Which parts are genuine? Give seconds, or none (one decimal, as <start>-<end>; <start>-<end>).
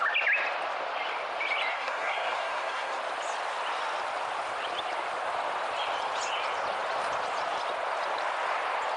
0.0-1.7; 3.0-9.0